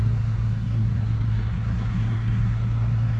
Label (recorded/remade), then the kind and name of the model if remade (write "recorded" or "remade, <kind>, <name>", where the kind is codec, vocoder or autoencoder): remade, codec, SNAC